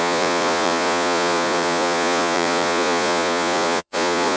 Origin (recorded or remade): remade